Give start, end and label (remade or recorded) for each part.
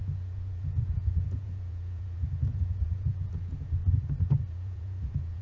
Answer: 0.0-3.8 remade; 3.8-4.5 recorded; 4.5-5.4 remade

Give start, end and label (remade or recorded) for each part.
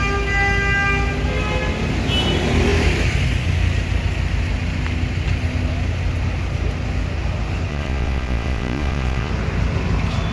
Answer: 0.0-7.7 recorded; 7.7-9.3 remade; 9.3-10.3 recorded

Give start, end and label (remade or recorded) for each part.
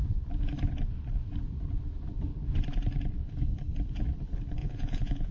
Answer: 0.0-4.6 recorded; 4.6-5.3 remade